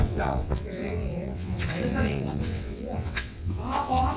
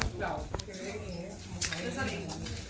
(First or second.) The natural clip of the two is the second